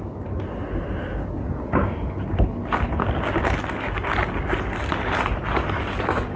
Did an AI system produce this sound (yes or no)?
no